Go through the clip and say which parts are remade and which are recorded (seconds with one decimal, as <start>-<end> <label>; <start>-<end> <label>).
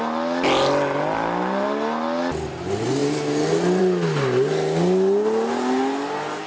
0.0-6.5 recorded